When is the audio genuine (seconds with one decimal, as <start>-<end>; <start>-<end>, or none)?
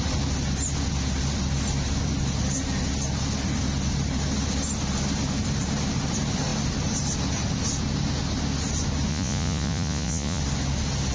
0.0-9.1; 10.4-11.1